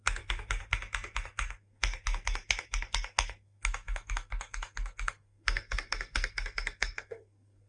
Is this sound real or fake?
fake